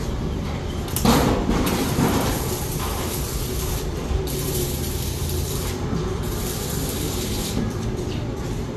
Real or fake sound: fake